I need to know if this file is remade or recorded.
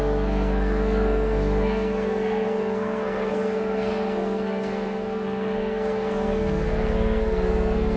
remade